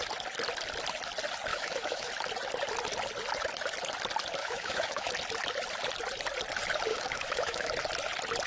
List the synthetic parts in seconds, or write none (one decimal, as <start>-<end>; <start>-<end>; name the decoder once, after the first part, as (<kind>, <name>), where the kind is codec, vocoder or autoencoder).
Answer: 1.5-2.1 (autoencoder, DAC-VAE); 4.4-5.1; 6.9-7.7

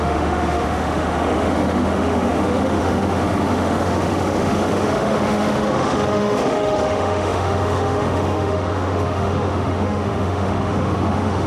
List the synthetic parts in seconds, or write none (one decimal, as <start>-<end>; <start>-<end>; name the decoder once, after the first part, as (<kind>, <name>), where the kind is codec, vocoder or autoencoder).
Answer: 0.0-11.5 (autoencoder, DAC-VAE)

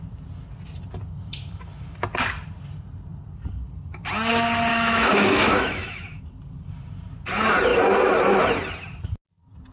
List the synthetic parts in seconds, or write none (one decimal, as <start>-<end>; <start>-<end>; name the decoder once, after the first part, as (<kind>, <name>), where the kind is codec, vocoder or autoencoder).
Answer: 4.7-6.2 (autoencoder, DAC-VAE)

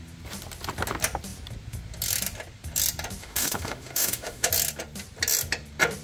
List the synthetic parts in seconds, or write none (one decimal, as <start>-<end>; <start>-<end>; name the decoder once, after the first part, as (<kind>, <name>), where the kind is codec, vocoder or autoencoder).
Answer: 3.2-4.5 (autoencoder, DAC-VAE)

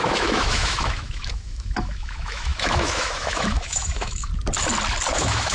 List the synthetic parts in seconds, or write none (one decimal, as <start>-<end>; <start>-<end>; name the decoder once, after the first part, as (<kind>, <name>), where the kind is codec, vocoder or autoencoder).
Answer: 0.0-4.3 (autoencoder, DAC-VAE); 5.1-5.5

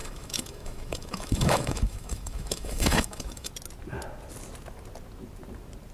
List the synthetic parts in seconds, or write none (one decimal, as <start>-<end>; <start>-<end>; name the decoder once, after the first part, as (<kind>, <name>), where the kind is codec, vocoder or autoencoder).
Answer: 0.0-3.5 (autoencoder, DAC-VAE)